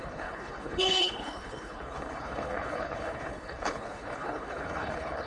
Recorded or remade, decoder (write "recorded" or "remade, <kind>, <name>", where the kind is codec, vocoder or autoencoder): remade, codec, HILCodec